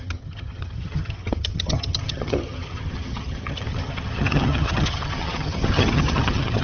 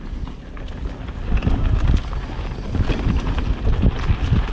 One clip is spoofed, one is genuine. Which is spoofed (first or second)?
first